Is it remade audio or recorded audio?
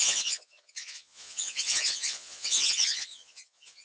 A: remade